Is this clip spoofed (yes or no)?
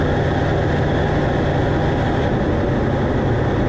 no